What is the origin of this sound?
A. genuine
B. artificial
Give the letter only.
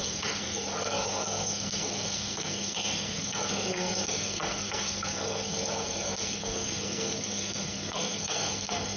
B